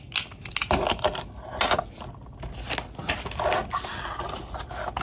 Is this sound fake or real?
real